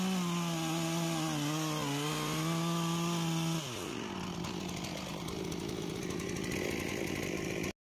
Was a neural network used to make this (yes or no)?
no